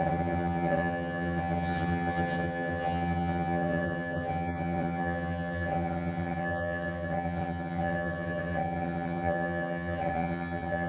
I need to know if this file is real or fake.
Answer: fake